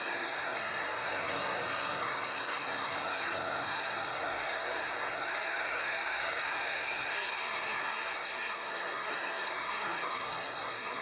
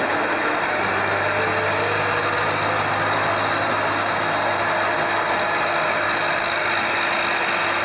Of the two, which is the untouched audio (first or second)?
second